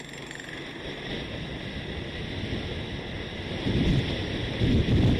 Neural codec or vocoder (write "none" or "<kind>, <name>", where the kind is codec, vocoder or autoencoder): none